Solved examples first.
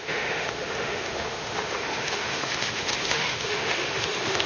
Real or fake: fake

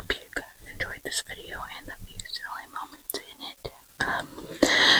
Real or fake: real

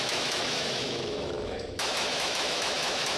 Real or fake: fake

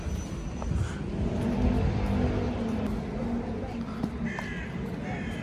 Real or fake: real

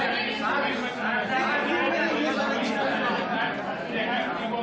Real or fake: real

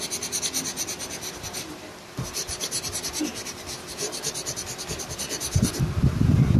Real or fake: real